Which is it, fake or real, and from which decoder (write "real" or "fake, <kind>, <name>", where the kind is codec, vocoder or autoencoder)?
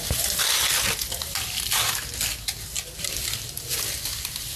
real